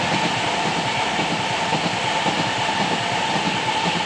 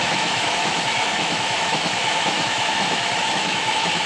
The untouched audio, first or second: first